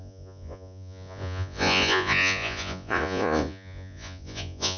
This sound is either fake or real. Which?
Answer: fake